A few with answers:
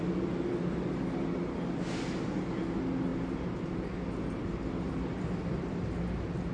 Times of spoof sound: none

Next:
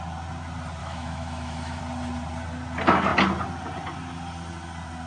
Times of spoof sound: 0.8-1.8 (autoencoder, DAC-VAE)